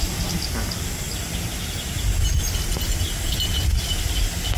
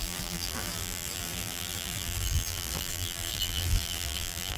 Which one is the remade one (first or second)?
second